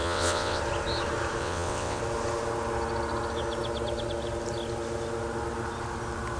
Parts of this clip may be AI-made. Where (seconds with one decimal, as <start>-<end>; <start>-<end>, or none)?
0.0-0.6; 1.4-2.0